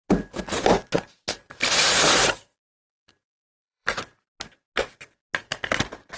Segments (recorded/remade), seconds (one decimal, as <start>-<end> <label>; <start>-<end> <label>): 0.0-2.9 recorded; 2.9-4.3 remade; 4.3-6.2 recorded